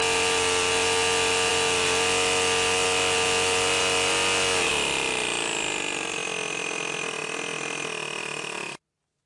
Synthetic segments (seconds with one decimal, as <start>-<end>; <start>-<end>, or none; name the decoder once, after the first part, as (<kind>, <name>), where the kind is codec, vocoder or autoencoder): none